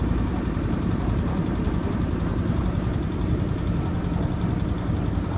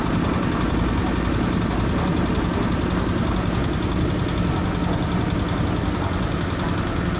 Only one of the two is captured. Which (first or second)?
second